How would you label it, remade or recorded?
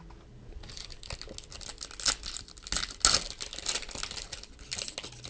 recorded